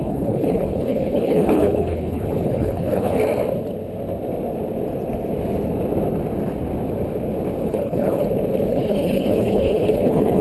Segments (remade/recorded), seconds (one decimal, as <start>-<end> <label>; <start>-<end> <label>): 0.0-3.2 remade; 3.2-7.6 recorded; 7.6-8.2 remade; 8.2-8.7 recorded; 8.7-10.4 remade

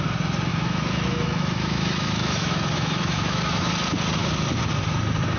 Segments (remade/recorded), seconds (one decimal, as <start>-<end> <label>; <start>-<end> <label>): 0.0-0.5 recorded; 0.5-3.7 remade; 3.7-5.4 recorded